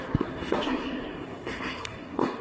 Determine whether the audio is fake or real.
fake